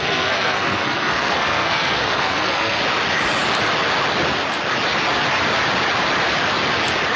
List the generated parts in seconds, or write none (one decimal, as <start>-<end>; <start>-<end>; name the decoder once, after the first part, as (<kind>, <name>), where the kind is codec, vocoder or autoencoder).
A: 0.0-2.8 (codec, SNAC)